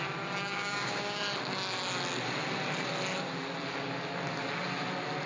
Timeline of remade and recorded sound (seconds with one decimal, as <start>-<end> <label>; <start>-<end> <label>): 0.0-0.4 recorded; 0.4-1.2 remade; 1.2-5.3 recorded